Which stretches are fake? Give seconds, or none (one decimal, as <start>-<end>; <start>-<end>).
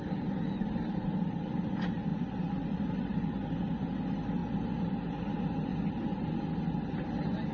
0.0-4.4; 5.2-5.7